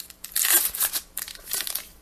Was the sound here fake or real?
fake